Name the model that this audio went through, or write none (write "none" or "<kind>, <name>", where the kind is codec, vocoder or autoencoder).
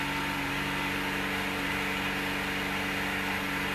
none